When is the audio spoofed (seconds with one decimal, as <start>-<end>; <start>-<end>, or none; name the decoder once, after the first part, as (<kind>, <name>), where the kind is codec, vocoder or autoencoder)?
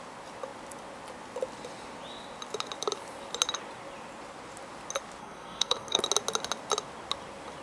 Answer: 5.2-6.0 (codec, SNAC)